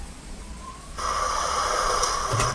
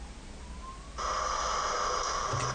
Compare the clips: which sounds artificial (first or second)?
first